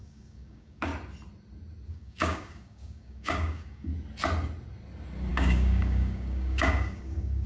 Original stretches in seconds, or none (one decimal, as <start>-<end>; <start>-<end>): 0.9-1.9; 3.9-5.3